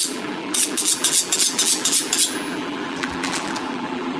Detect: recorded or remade remade